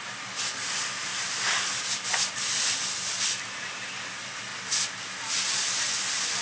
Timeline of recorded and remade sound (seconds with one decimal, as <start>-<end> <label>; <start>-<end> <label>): 0.0-6.4 recorded